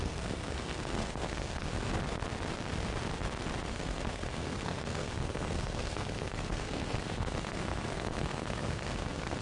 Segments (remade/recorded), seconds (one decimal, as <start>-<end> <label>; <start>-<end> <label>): 0.0-1.9 remade; 1.9-3.7 recorded; 3.7-9.4 remade